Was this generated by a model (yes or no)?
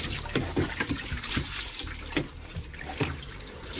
yes